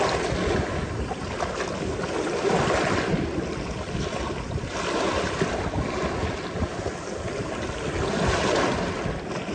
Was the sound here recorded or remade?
recorded